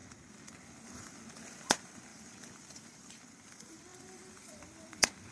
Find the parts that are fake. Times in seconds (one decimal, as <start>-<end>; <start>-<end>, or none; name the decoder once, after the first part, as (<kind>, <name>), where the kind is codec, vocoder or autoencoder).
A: 2.1-3.2 (vocoder, BigVGAN v2); 3.9-4.6